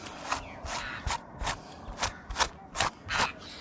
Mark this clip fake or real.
real